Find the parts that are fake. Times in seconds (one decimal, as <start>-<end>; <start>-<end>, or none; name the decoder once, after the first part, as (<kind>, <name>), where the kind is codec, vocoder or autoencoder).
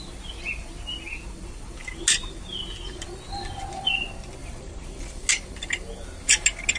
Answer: 4.4-5.3 (vocoder, BigVGAN v2)